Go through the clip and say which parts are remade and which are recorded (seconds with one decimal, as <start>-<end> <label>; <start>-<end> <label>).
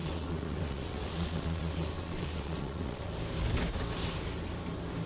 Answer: 0.0-3.1 remade; 3.1-5.1 recorded